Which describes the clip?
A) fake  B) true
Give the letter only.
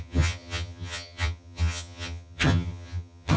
A